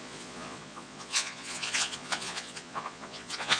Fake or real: fake